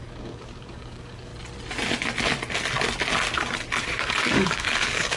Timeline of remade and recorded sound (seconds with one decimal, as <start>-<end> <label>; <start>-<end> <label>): 0.0-1.3 remade; 1.3-3.8 recorded; 3.8-5.2 remade